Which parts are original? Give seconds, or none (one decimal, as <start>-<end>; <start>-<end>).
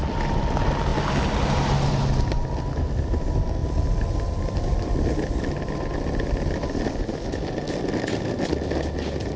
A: 0.0-9.4